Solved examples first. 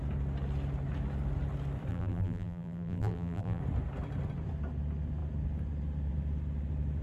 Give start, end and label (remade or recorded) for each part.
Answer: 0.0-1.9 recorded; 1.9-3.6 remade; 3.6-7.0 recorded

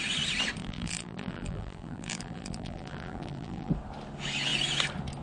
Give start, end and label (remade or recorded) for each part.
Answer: 0.0-0.6 recorded; 0.6-3.7 remade; 3.7-5.2 recorded